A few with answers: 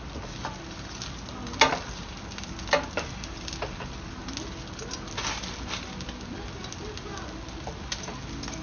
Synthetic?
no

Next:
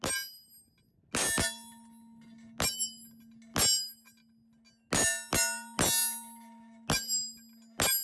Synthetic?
no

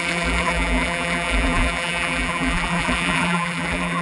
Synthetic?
yes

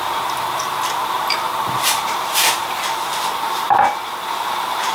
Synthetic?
yes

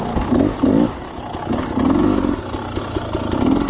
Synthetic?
no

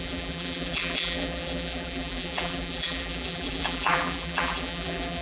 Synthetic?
yes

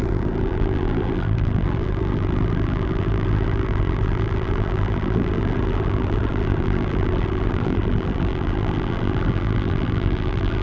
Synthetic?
yes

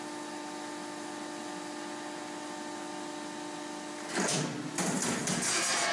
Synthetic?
no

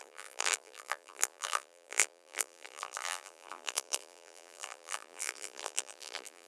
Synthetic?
yes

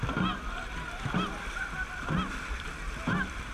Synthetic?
yes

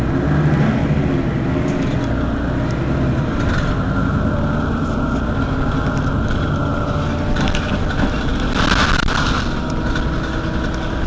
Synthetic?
no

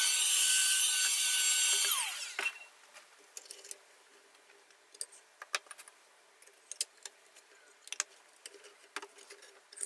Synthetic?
no